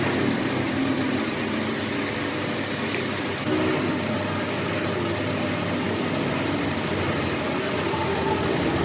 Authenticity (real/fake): real